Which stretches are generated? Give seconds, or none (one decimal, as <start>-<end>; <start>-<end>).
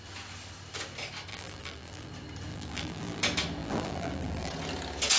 1.3-2.1; 2.5-3.2; 3.6-4.5